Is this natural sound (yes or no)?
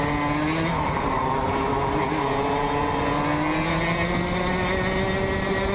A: yes